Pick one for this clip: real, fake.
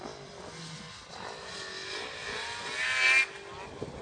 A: real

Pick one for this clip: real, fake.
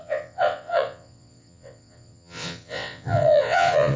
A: fake